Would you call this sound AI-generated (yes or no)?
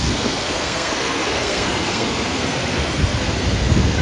yes